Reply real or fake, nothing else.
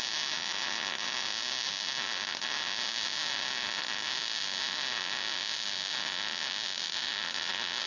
real